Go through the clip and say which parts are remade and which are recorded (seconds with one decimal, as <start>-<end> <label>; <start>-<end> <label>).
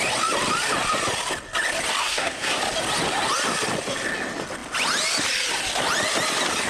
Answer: 0.0-2.0 recorded; 2.0-2.6 remade; 2.6-6.7 recorded